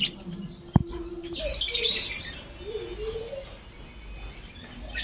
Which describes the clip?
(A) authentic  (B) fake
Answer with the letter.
A